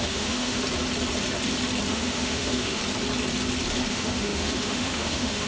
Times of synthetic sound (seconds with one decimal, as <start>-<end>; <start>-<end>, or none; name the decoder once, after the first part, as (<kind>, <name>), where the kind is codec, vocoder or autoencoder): 0.0-0.6 (autoencoder, DAC-VAE); 1.9-2.8; 3.9-5.5